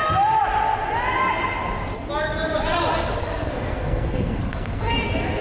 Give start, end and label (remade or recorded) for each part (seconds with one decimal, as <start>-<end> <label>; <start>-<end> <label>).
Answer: 0.0-3.2 recorded; 3.2-4.9 remade; 4.9-5.4 recorded